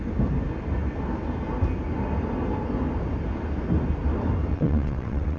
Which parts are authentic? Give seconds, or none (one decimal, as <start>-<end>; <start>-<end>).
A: 0.0-4.5